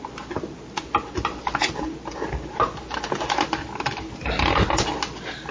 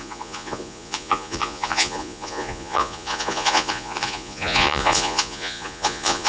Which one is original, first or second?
first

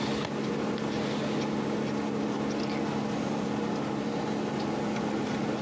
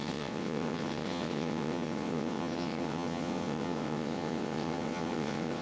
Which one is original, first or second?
first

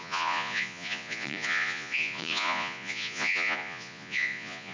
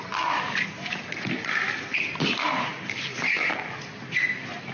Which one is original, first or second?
second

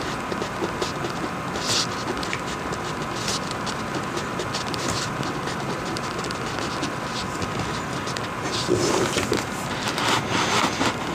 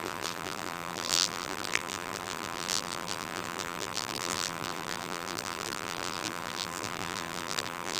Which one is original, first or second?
first